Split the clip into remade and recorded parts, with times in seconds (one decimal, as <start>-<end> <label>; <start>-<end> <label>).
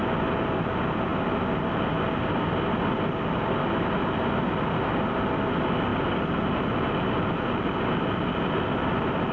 0.0-9.3 recorded